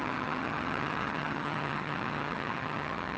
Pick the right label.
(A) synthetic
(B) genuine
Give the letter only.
A